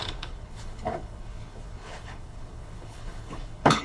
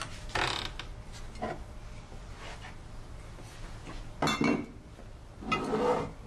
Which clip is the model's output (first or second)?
first